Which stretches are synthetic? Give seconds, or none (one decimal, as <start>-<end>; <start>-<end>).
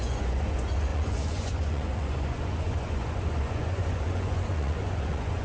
0.0-5.4